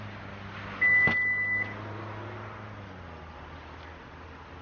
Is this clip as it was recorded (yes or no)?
yes